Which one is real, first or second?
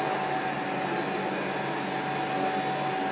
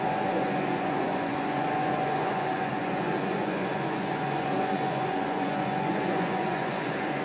first